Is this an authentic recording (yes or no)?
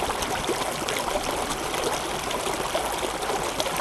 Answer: yes